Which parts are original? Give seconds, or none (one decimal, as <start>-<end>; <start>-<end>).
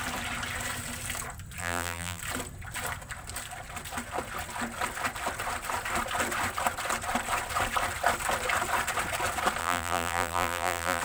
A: 0.0-1.6; 2.2-9.6